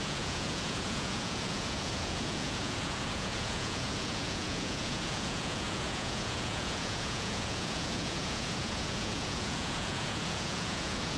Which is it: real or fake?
fake